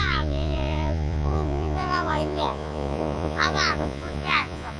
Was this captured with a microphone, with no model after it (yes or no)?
no